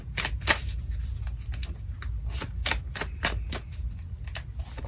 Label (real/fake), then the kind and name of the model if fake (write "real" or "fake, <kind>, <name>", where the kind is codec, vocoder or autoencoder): real